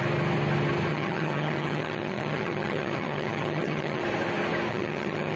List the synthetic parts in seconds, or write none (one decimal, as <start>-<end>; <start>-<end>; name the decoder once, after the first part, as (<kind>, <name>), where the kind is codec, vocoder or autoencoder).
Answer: 0.9-4.0 (vocoder, HiFi-GAN); 4.7-5.4